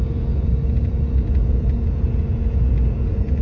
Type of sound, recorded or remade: remade